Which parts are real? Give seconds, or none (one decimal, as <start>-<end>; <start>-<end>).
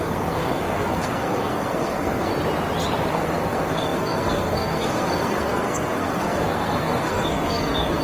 2.3-3.1